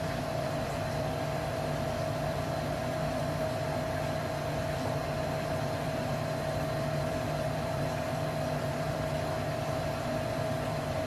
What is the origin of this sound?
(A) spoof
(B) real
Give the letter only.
A